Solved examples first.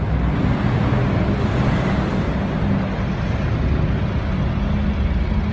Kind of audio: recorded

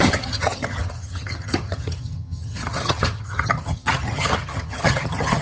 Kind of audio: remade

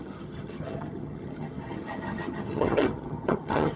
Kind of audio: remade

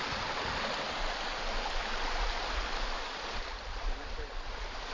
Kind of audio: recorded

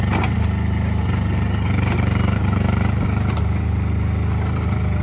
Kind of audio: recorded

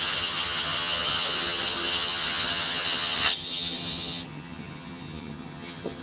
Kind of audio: remade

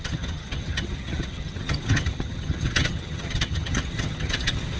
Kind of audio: remade